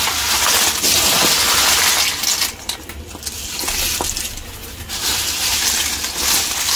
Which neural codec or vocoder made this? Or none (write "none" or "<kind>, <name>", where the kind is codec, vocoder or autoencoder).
none